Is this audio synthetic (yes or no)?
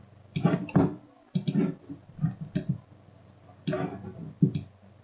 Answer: no